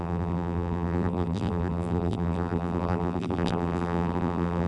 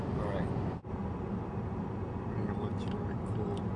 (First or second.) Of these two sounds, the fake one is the first